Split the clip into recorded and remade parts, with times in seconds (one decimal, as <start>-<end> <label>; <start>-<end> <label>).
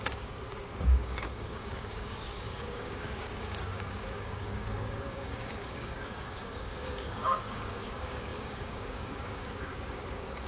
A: 0.0-10.5 remade